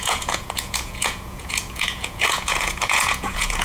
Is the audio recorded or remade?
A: remade